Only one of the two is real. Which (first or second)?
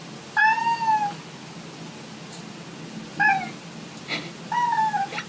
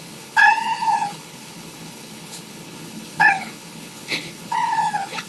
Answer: first